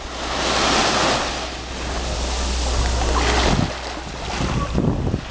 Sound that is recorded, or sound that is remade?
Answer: recorded